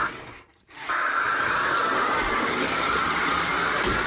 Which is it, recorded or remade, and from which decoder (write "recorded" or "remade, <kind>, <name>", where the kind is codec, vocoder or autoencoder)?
recorded